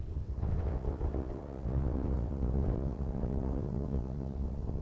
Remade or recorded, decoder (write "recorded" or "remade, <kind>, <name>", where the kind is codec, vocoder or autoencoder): remade, vocoder, WaveNeXt